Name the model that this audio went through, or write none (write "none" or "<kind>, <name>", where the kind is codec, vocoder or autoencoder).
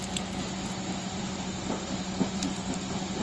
none